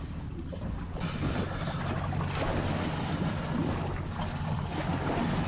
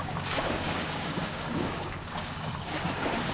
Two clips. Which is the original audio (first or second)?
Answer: first